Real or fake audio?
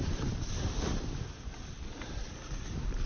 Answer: real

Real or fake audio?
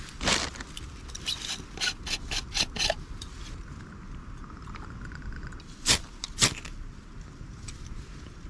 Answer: real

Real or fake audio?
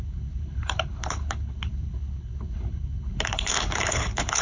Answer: fake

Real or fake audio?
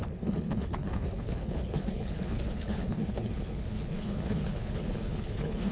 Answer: fake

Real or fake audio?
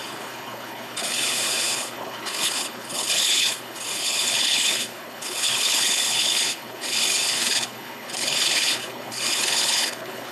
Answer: fake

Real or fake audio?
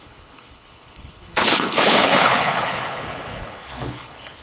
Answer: fake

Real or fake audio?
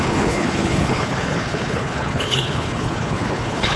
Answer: fake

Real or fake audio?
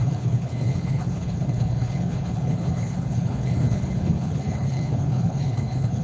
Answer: fake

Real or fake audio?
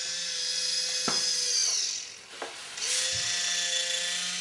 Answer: real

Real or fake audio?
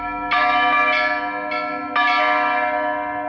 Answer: real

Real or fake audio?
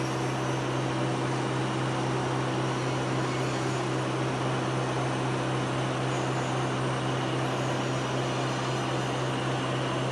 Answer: real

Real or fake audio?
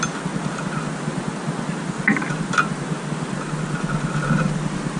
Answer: real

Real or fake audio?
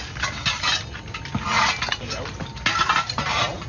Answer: real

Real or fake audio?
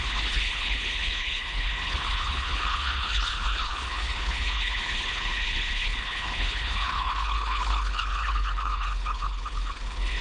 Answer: fake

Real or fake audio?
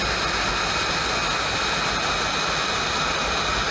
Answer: real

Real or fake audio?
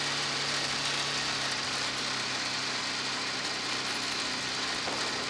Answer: real